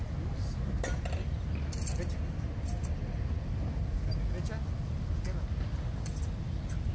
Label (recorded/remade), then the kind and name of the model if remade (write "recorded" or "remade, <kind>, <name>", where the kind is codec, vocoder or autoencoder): recorded